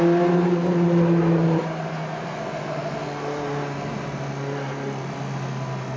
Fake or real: real